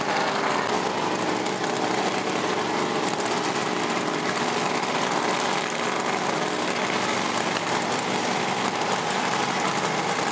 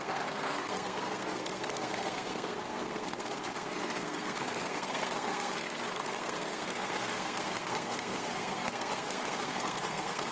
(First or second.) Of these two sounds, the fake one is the second